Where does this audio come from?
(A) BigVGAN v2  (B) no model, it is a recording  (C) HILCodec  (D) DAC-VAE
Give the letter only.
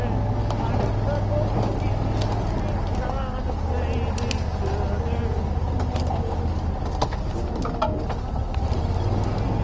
B